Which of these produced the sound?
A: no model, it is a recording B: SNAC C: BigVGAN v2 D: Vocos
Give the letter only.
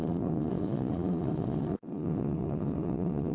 D